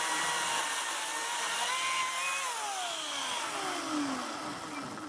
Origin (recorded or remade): recorded